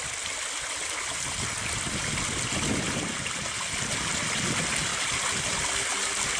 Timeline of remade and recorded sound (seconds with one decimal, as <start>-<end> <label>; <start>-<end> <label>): 0.0-6.4 recorded